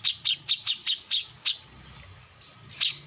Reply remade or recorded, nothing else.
recorded